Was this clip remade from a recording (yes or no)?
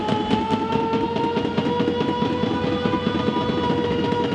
no